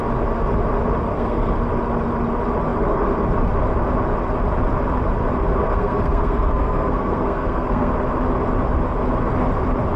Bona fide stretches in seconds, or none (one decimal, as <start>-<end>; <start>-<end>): 0.0-1.1; 1.6-5.6; 7.9-10.0

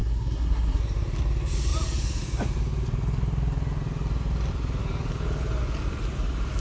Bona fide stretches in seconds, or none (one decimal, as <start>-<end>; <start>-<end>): 0.8-6.6

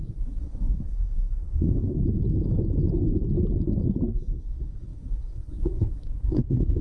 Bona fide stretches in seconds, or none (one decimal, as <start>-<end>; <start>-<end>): 2.0-4.4

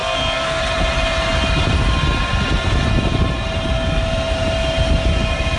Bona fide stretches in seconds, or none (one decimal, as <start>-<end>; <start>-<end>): 0.6-5.6

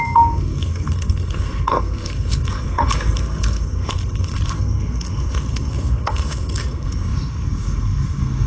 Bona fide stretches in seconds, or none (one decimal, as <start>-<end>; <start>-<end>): none